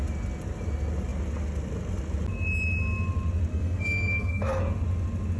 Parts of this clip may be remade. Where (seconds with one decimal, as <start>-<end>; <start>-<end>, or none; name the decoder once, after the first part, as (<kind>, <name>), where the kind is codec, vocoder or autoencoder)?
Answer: 3.5-4.6 (codec, SNAC)